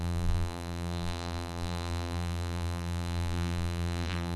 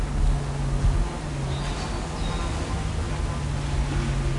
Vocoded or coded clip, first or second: first